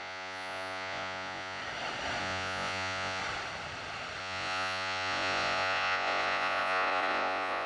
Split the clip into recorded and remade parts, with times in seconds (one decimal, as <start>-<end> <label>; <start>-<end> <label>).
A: 0.0-1.6 remade; 1.6-2.2 recorded; 2.2-3.2 remade; 3.2-4.2 recorded; 4.2-7.7 remade